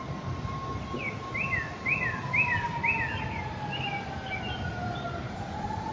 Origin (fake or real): real